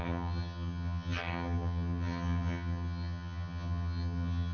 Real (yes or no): no